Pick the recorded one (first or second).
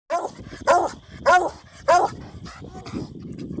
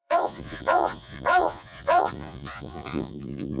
first